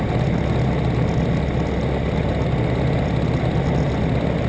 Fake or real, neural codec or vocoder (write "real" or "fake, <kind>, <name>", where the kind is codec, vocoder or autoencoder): real